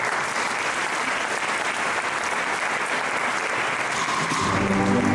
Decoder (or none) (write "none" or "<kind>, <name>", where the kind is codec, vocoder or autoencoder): none